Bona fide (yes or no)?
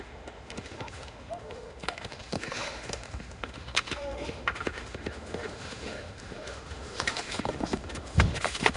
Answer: no